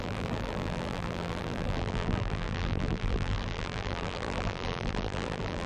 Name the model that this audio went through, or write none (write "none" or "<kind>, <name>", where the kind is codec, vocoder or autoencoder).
vocoder, BigVGAN v2